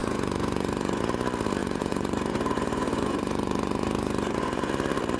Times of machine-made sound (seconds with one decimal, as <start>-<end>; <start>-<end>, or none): 0.0-1.0; 1.6-4.7